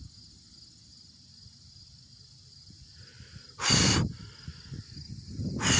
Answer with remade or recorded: recorded